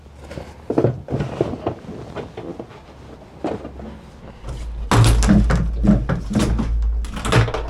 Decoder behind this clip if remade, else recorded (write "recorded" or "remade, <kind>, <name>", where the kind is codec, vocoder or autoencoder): recorded